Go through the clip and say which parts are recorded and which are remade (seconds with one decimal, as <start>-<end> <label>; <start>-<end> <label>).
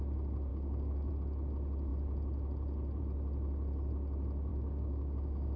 0.0-0.5 recorded; 0.5-1.1 remade; 1.1-4.5 recorded; 4.5-5.6 remade